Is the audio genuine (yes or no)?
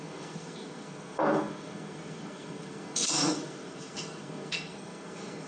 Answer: no